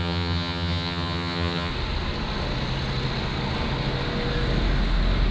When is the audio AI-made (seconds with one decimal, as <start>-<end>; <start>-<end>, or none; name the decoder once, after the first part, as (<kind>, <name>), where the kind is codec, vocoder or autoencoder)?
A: 0.0-1.7 (vocoder, HiFi-GAN)

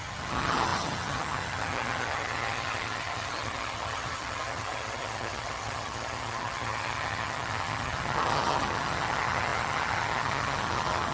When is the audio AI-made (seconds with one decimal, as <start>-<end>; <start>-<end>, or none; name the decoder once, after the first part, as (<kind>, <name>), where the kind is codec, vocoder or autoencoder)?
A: 0.0-11.1 (vocoder, HiFi-GAN)